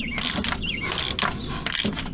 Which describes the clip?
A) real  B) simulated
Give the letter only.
A